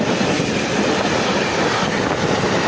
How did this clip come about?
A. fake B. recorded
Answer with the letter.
B